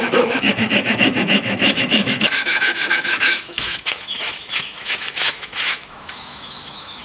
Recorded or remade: remade